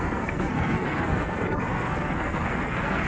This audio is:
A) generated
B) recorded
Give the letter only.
A